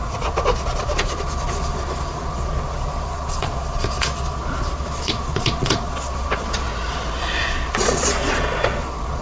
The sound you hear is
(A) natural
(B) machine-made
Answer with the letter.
B